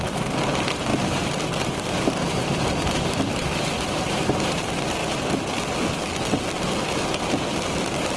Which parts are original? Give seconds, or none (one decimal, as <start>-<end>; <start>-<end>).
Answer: 5.0-8.2